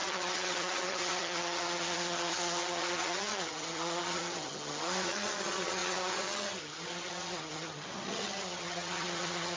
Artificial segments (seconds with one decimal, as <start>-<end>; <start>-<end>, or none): 0.0-9.6